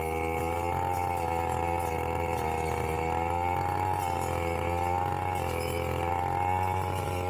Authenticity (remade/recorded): recorded